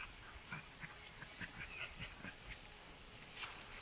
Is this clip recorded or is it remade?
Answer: recorded